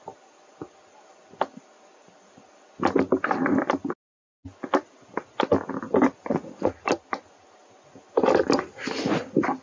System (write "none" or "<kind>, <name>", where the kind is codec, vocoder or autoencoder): none